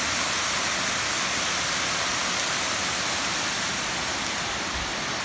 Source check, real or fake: real